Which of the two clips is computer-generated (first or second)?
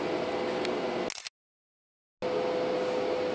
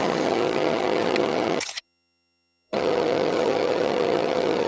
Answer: second